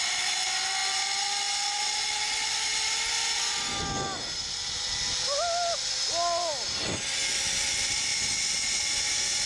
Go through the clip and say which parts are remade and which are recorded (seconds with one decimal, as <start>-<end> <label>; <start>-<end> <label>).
0.0-9.5 recorded